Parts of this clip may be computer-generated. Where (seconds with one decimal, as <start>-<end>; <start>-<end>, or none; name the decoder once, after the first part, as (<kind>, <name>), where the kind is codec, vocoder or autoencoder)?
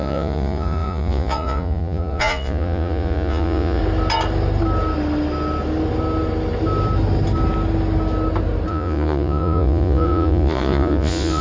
0.0-3.8 (vocoder, Vocos); 8.7-11.4